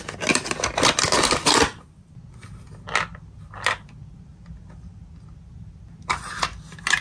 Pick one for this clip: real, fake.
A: real